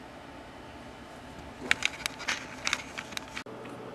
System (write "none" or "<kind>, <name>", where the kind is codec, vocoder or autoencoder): none